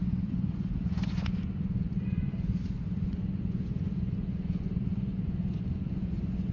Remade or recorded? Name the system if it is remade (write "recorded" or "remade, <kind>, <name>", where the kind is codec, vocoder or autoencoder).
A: remade, vocoder, Vocos